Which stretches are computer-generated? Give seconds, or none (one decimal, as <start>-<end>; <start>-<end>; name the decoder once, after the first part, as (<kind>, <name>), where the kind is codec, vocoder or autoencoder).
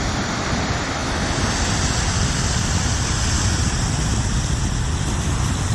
0.0-1.0 (vocoder, BigVGAN v2); 1.7-2.9; 4.7-5.7